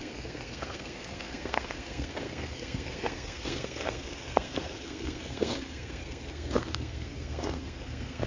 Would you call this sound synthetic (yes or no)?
yes